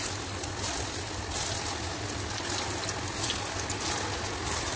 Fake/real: real